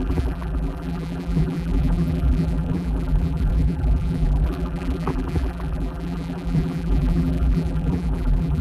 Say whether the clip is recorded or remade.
remade